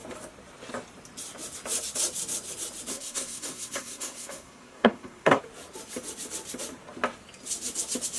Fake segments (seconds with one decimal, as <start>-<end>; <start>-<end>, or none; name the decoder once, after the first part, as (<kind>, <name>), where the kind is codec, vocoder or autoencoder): 2.9-5.4 (codec, SNAC)